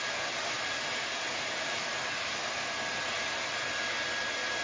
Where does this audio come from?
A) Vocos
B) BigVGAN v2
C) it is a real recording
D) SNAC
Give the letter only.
C